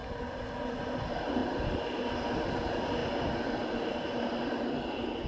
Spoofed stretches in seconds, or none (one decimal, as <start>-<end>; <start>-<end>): 0.0-1.0; 1.4-2.1